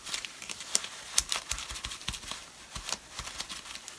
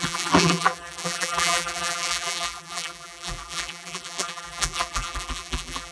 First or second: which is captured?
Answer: first